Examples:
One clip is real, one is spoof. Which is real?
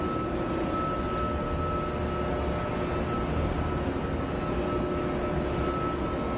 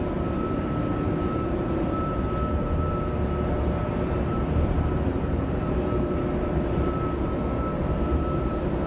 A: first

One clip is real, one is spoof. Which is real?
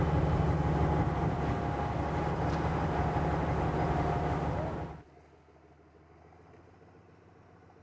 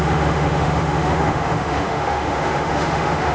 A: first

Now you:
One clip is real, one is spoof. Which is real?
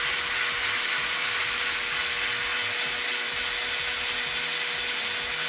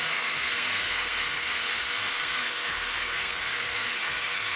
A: first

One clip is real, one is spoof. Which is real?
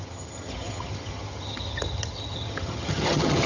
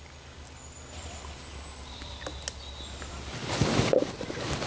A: second